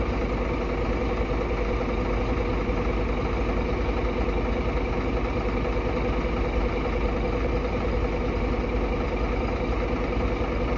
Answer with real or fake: real